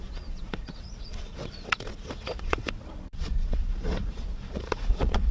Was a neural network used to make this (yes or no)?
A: yes